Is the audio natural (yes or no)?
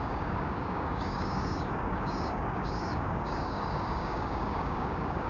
no